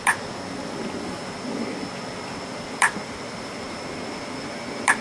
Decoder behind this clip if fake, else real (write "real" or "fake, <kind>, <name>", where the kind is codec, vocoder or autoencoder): real